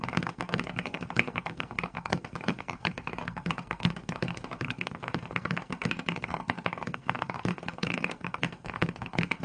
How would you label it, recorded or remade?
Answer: remade